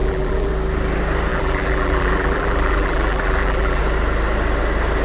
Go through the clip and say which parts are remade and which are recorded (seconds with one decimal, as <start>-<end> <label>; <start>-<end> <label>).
0.0-0.5 remade; 0.5-1.3 recorded; 1.3-3.8 remade; 3.8-5.0 recorded